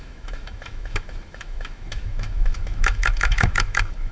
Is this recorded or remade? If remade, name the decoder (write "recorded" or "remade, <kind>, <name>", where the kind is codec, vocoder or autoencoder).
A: remade, autoencoder, DAC-VAE